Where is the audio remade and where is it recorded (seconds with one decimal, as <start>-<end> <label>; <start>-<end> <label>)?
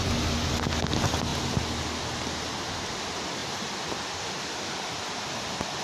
0.0-5.8 recorded